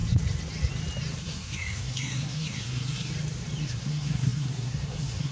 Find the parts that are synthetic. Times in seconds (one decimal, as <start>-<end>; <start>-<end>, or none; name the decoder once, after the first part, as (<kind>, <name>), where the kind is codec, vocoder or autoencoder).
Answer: 1.2-3.1 (codec, SNAC); 3.6-5.3